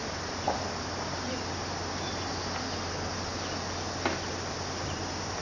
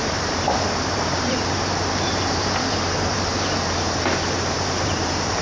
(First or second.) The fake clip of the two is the second